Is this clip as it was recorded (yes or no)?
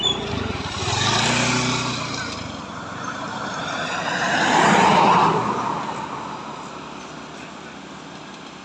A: yes